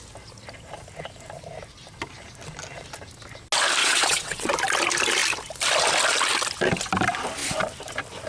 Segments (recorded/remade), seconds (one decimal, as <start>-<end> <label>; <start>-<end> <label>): 0.0-3.8 recorded; 3.8-4.5 remade; 4.5-8.3 recorded